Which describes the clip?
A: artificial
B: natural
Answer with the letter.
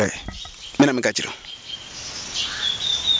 B